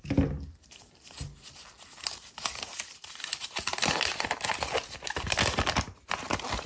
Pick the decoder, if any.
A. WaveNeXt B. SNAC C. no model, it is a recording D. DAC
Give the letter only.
C